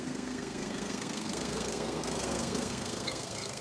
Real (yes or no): no